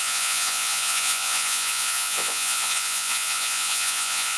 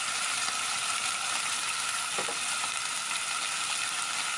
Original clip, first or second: second